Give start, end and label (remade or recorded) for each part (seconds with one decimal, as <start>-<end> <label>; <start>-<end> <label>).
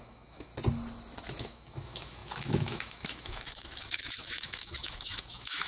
0.0-0.5 remade; 0.5-1.4 recorded; 1.4-5.7 remade